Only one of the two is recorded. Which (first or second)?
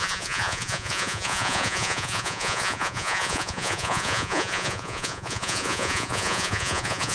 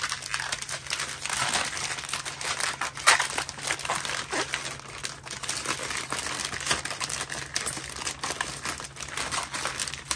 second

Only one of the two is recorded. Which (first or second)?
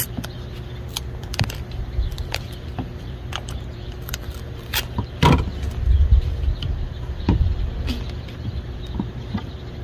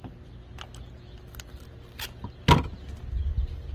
second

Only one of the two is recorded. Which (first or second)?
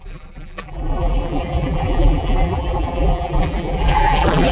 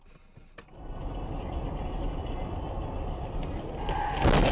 second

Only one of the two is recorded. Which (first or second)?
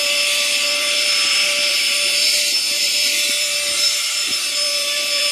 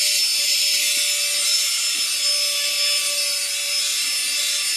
second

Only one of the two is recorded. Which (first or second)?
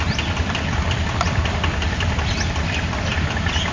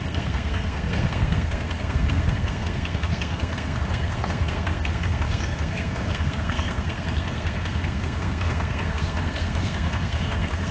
first